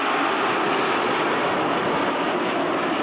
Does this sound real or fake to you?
real